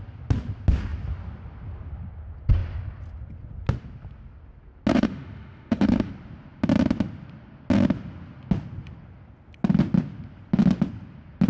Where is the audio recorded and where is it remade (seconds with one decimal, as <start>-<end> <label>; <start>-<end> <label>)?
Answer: 0.0-4.9 recorded; 4.9-6.1 remade; 6.1-11.5 recorded